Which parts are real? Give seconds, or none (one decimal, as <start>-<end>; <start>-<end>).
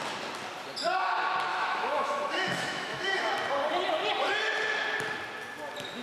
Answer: 0.0-1.5; 3.3-6.0